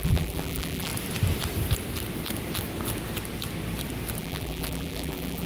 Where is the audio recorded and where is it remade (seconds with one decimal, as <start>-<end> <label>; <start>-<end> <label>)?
0.0-0.9 remade; 0.9-4.2 recorded; 4.2-5.5 remade